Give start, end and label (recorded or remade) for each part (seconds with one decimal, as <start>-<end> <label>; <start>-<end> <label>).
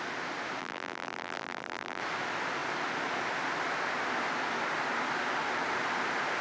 0.0-0.6 recorded; 0.6-2.0 remade; 2.0-6.4 recorded